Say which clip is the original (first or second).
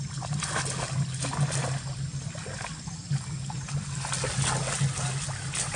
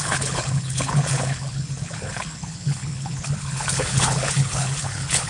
first